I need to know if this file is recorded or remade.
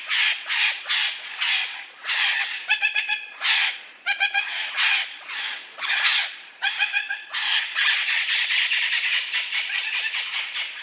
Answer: remade